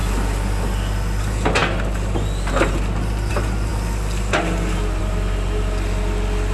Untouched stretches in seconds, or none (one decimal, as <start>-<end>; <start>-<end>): 0.0-6.5